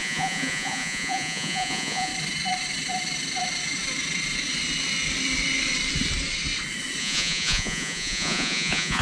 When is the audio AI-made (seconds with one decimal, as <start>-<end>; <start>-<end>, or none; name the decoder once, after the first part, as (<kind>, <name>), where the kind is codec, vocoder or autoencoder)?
0.0-2.1 (vocoder, Vocos); 7.0-9.0